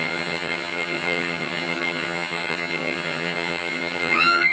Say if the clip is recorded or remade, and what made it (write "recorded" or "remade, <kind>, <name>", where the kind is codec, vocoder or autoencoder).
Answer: remade, vocoder, HiFi-GAN